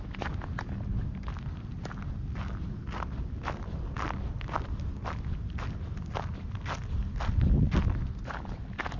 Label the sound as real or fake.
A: real